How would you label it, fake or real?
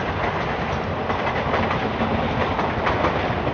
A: real